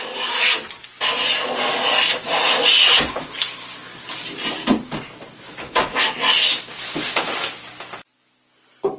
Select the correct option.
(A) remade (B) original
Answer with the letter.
B